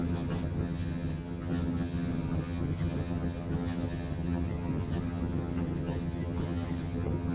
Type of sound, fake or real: fake